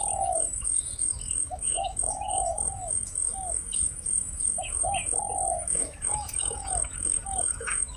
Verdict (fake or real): fake